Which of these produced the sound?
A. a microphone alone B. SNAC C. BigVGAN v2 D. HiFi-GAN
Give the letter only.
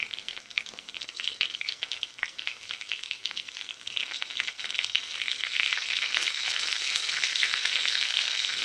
B